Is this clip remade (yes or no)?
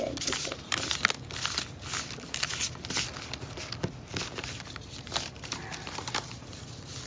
no